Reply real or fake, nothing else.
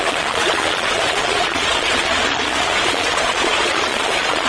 fake